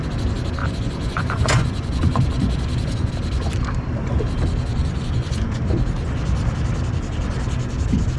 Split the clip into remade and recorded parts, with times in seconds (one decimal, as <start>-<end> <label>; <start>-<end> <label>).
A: 0.0-0.6 recorded; 0.6-3.1 remade; 3.1-4.7 recorded; 4.7-5.6 remade; 5.6-8.2 recorded